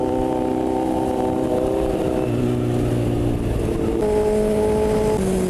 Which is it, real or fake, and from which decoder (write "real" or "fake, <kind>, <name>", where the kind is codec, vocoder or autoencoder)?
real